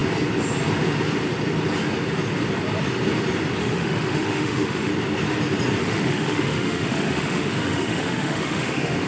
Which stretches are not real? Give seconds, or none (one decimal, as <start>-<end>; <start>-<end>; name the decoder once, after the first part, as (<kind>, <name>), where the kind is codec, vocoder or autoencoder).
3.6-4.9 (autoencoder, DAC-VAE); 5.8-9.1